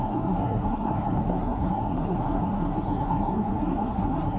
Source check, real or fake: fake